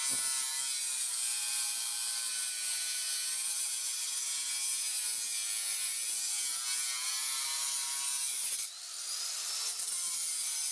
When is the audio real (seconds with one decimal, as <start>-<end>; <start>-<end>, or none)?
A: 0.0-10.7